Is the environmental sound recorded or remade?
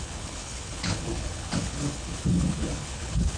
remade